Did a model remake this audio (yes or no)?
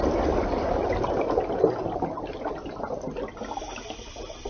no